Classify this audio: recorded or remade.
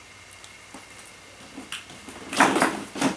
recorded